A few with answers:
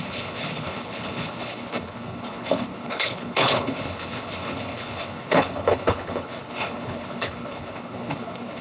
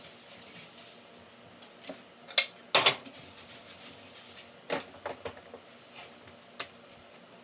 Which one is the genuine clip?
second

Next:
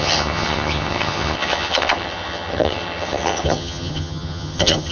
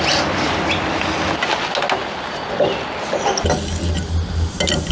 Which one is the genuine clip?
second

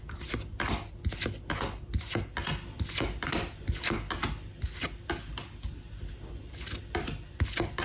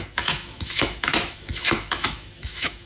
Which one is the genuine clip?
first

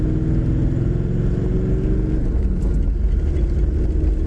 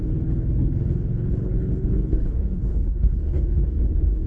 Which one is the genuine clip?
first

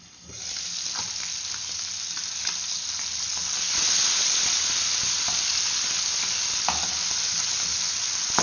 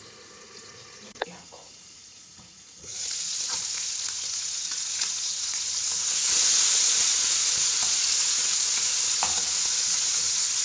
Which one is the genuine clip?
first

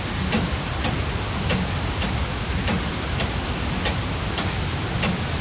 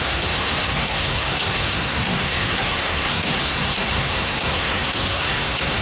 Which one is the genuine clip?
first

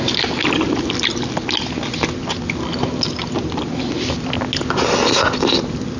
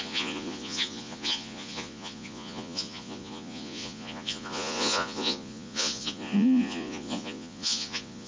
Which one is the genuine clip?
first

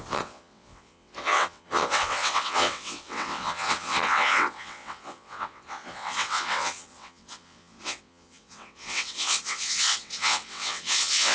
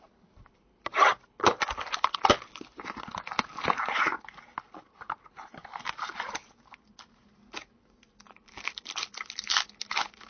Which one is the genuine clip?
second